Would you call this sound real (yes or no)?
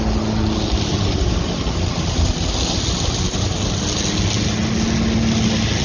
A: yes